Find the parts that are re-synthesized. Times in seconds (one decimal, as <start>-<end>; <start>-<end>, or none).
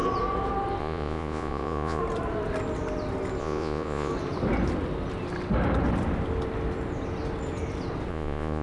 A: 0.8-2.0; 3.4-4.1; 8.1-8.6